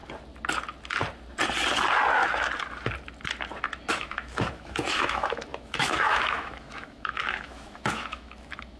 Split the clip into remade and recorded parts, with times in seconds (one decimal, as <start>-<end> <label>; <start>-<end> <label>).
0.0-3.9 recorded; 3.9-8.8 remade